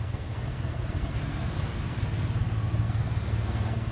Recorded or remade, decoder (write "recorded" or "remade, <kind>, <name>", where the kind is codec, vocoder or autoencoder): remade, codec, SNAC